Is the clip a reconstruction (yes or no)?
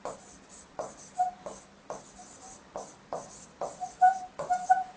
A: no